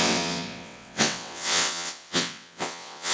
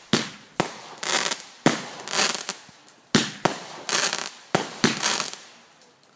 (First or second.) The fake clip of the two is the first